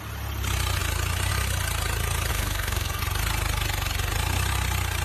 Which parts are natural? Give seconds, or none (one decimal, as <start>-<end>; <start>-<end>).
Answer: 0.0-2.3; 3.0-5.0